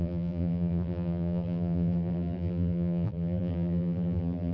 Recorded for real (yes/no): no